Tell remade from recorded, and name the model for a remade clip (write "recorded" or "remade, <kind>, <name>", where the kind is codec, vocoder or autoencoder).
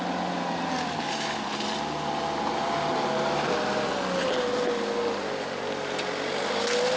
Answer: recorded